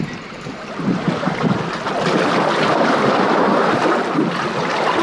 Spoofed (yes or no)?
no